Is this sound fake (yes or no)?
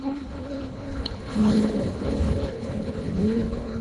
yes